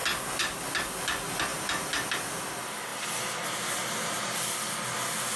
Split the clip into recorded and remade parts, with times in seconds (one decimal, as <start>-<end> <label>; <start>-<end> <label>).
0.0-5.4 recorded

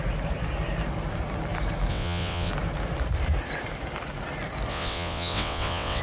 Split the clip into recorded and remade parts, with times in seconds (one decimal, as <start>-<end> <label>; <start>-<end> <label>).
0.0-1.9 recorded; 1.9-2.5 remade; 2.5-4.7 recorded; 4.7-6.0 remade

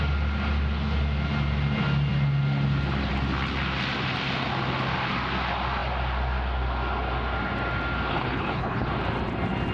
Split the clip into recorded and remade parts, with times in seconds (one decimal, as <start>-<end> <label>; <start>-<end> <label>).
0.0-8.1 recorded; 8.1-8.9 remade; 8.9-9.7 recorded

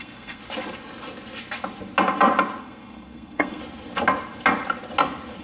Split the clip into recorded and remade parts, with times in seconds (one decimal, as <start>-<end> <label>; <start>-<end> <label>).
0.0-0.4 remade; 0.4-2.6 recorded; 2.6-3.6 remade; 3.6-5.4 recorded